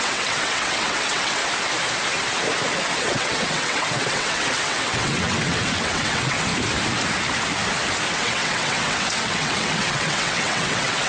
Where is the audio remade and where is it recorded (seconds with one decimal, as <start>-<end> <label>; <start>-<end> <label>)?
0.0-1.4 remade; 1.4-3.0 recorded; 3.0-6.5 remade; 6.5-8.1 recorded; 8.1-11.1 remade